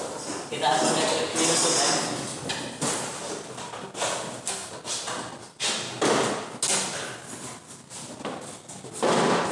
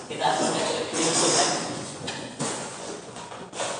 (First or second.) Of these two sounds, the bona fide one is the first